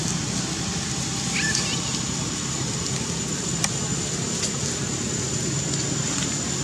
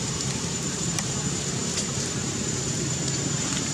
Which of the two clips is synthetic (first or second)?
second